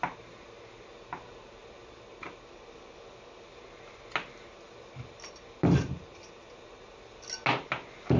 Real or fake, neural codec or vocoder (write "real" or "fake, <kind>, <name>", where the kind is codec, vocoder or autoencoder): real